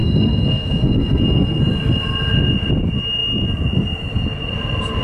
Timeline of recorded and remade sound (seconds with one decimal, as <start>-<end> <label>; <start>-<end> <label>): 0.0-1.6 remade; 1.6-5.0 recorded